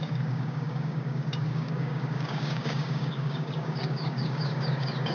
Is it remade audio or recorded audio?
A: remade